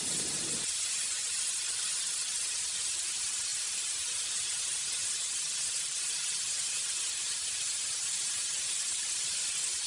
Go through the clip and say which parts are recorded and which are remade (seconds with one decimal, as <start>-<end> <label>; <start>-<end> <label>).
0.0-9.9 recorded